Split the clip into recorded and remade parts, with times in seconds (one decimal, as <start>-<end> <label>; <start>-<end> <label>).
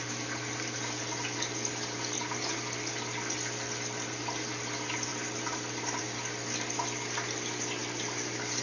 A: 0.0-8.6 recorded